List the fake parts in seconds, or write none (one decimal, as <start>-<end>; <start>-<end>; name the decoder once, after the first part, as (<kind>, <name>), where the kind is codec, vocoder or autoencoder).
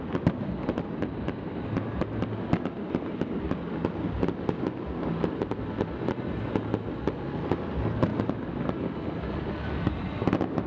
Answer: none